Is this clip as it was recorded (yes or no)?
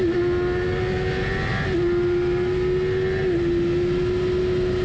yes